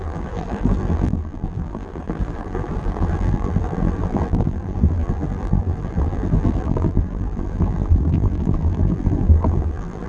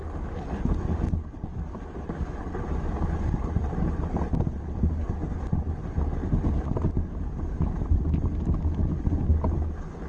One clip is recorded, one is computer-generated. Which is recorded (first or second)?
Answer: second